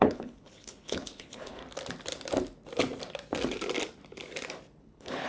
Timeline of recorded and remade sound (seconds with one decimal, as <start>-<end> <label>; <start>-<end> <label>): 0.0-1.6 remade; 1.6-4.8 recorded; 4.8-5.3 remade